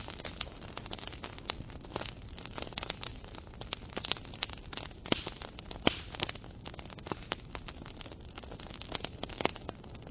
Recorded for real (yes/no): yes